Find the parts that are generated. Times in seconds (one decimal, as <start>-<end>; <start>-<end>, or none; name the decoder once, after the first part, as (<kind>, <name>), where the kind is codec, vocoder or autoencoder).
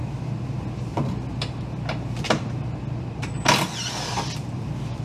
none